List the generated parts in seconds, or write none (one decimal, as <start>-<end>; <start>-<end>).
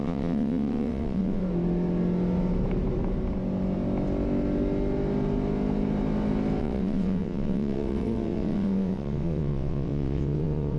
0.0-1.4; 6.6-10.8